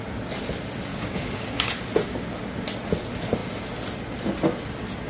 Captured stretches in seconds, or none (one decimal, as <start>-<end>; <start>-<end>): 0.0-0.9; 1.7-5.1